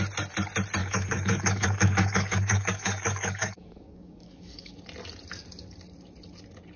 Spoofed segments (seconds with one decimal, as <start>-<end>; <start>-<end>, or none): 0.8-4.7